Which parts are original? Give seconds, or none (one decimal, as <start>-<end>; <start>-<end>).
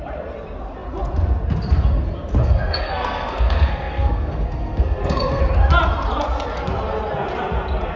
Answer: 0.0-2.4; 5.4-8.0